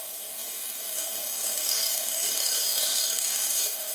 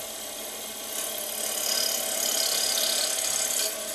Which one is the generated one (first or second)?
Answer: first